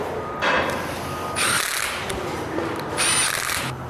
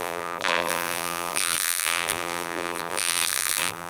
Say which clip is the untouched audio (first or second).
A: first